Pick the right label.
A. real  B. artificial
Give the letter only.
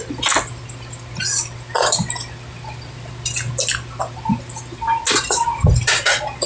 A